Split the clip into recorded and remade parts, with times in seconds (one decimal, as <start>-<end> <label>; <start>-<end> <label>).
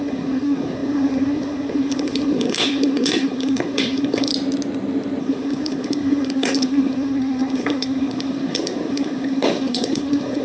0.0-4.3 remade; 4.3-5.2 recorded; 5.2-10.4 remade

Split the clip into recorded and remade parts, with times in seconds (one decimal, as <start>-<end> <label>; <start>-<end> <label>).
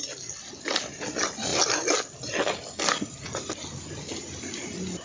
0.0-5.0 recorded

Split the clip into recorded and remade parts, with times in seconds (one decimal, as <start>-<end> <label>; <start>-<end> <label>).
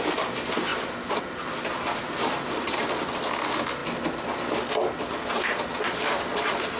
0.0-0.7 remade; 0.7-1.2 recorded; 1.2-3.8 remade; 3.8-6.0 recorded; 6.0-6.8 remade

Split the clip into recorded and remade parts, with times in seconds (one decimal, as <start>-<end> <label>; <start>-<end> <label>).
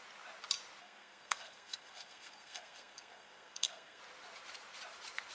0.0-0.8 recorded; 0.8-4.0 remade; 4.0-5.3 recorded